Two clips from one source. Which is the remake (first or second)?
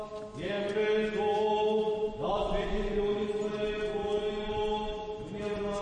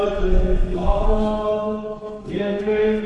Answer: second